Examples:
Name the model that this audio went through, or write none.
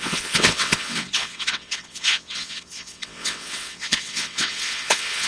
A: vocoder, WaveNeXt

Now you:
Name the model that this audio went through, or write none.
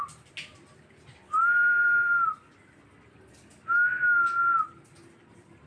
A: none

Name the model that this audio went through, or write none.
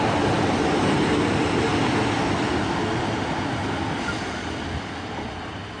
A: none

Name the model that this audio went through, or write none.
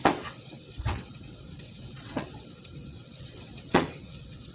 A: vocoder, WaveNeXt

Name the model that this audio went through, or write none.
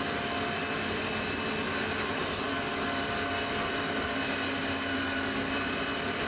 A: none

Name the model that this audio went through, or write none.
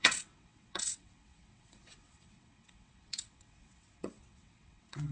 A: vocoder, WaveNeXt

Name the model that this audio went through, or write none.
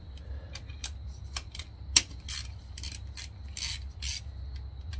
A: none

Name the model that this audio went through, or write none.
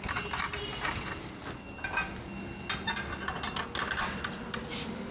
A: none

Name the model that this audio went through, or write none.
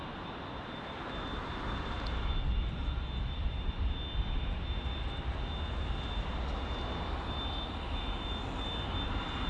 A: none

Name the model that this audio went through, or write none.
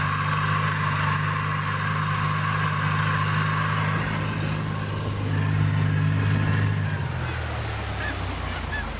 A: none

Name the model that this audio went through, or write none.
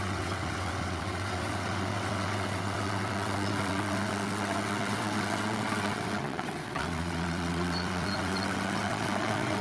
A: vocoder, WaveNeXt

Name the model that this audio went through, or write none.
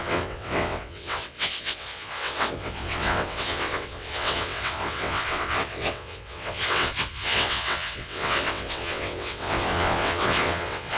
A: vocoder, WaveNeXt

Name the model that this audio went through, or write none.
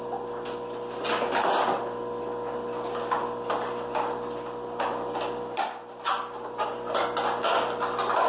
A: none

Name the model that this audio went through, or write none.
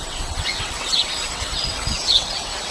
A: vocoder, WaveNeXt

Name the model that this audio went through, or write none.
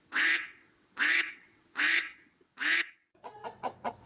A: vocoder, WaveNeXt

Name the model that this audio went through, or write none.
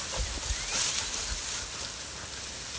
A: none